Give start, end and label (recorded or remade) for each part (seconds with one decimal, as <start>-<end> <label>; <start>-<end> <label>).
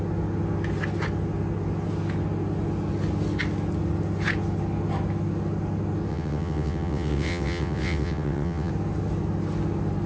0.0-6.1 recorded; 6.1-8.7 remade; 8.7-10.1 recorded